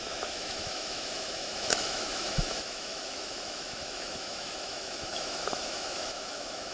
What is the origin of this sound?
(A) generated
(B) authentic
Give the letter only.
A